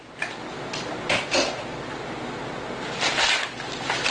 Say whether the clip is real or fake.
real